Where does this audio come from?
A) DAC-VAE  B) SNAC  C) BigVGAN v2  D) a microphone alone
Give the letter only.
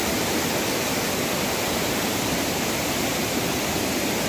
C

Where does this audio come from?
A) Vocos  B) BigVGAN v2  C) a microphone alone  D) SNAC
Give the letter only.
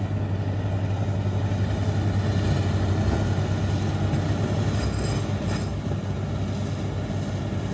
C